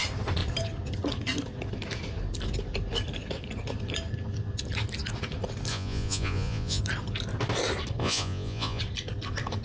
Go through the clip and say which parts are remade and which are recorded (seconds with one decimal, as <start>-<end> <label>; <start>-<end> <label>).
0.0-5.7 recorded; 5.7-6.8 remade; 6.8-8.0 recorded; 8.0-8.8 remade; 8.8-9.6 recorded